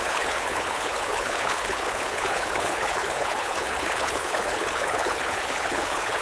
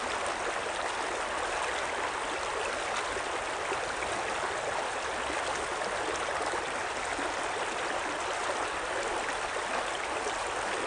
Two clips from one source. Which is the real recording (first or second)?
second